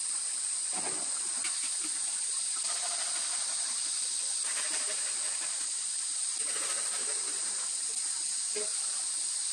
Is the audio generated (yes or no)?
no